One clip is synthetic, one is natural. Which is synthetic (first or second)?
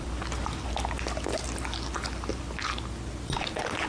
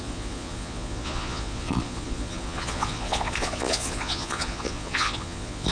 second